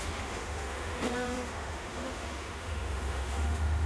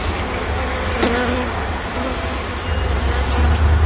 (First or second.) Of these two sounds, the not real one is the first